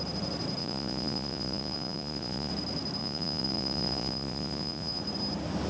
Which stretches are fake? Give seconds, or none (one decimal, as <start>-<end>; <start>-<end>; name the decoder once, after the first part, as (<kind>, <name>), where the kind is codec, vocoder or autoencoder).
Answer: 0.6-2.5 (vocoder, Vocos); 3.0-5.0